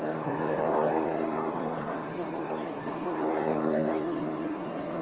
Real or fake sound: fake